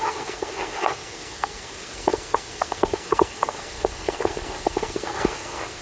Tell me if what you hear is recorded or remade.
remade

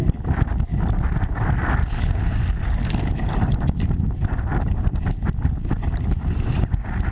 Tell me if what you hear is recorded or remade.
recorded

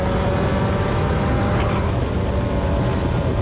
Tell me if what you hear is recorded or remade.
recorded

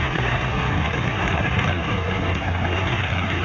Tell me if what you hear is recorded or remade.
remade